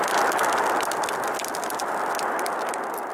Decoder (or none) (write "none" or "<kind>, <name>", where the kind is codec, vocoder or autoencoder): none